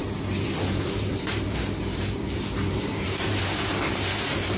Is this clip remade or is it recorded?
remade